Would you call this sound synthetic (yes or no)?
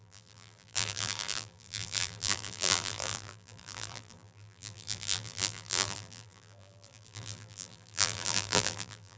yes